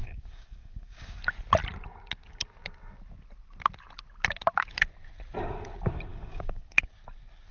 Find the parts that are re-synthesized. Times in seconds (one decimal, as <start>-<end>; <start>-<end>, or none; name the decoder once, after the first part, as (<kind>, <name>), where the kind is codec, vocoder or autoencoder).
0.0-1.2 (codec, DAC); 6.1-6.8